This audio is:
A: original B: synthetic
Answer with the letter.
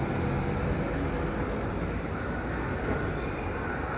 A